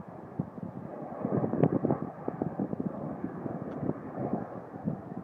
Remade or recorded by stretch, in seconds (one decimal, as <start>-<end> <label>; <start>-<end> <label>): 0.0-5.2 recorded